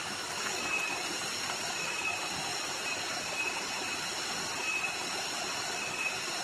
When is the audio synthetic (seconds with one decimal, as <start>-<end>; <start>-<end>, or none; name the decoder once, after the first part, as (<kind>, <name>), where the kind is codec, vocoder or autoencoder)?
0.6-2.1 (vocoder, BigVGAN v2); 2.5-5.0